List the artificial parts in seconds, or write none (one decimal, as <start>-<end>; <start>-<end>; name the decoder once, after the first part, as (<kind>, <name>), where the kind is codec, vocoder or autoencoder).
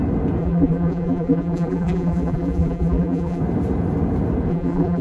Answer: 0.4-3.4 (vocoder, BigVGAN v2); 4.5-5.0